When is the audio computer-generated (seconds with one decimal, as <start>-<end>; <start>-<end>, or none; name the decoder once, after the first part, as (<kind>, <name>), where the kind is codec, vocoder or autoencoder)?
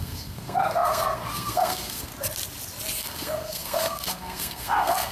0.0-2.1 (codec, SNAC); 3.0-5.1